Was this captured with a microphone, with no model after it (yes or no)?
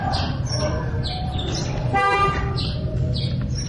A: no